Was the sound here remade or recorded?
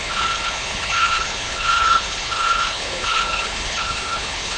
remade